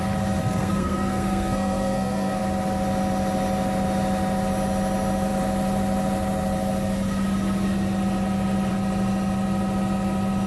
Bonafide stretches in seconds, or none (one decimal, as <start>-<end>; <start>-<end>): 0.0-0.4; 2.4-10.5